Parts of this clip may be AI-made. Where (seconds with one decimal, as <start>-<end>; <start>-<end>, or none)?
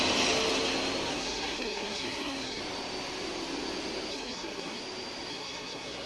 1.1-2.6; 4.1-4.8; 5.3-6.1